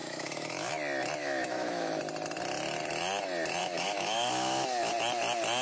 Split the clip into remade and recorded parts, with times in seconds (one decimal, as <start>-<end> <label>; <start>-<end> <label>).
0.0-0.7 remade; 0.7-1.2 recorded; 1.2-2.0 remade; 2.0-3.6 recorded; 3.6-4.9 remade; 4.9-5.6 recorded